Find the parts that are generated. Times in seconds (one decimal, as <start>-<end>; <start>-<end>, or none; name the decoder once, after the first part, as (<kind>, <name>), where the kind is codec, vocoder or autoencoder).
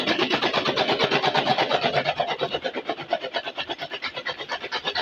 none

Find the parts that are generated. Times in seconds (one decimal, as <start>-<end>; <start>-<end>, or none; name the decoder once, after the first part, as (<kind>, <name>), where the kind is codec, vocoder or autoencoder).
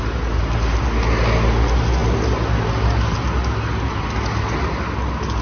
none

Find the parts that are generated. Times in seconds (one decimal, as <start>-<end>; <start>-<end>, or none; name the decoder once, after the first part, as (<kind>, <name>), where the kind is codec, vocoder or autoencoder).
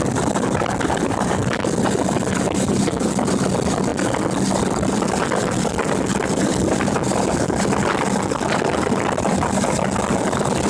0.0-3.9 (vocoder, BigVGAN v2); 4.6-10.7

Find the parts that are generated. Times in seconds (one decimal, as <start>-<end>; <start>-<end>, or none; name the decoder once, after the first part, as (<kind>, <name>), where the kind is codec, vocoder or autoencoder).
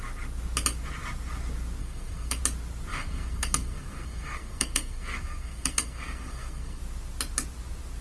1.8-2.4 (codec, SNAC); 2.9-6.8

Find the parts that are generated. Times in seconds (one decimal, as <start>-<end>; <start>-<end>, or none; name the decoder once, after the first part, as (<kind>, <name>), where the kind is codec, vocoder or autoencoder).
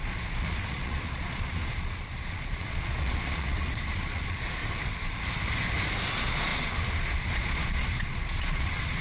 0.0-4.6 (vocoder, Vocos); 6.1-9.0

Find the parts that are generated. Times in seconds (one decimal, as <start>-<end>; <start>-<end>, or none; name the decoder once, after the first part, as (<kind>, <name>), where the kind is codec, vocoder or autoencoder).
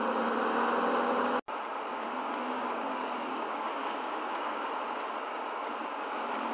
1.9-4.7 (codec, DAC); 5.8-6.5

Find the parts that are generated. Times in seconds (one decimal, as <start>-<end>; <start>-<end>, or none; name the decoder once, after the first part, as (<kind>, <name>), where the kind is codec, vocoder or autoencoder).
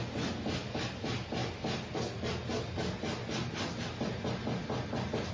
none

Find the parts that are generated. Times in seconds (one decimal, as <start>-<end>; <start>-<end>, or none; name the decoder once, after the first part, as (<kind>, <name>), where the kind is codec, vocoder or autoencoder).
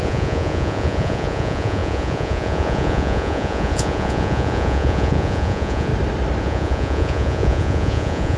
0.0-5.9 (vocoder, Vocos); 6.4-8.4